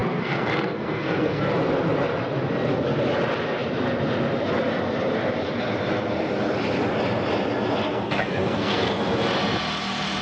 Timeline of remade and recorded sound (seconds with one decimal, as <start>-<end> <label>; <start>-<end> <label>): 0.0-1.5 remade; 1.5-7.9 recorded; 7.9-9.0 remade; 9.0-10.2 recorded

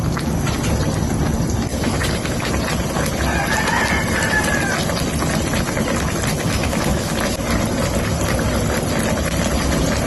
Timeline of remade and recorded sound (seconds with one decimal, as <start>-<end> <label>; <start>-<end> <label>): 0.0-1.7 recorded; 1.7-2.5 remade; 2.5-6.3 recorded; 6.3-7.1 remade; 7.1-10.1 recorded

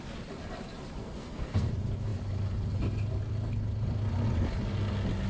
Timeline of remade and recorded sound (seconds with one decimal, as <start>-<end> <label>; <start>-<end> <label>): 0.0-1.0 recorded; 1.0-1.7 remade; 1.7-5.3 recorded